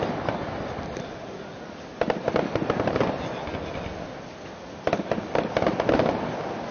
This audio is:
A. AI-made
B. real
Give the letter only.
B